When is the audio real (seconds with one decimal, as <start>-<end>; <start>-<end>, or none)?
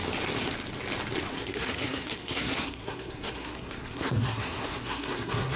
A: 0.0-1.3